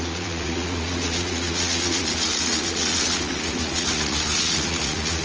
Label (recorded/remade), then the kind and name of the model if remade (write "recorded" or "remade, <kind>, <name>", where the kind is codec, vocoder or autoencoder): remade, vocoder, Vocos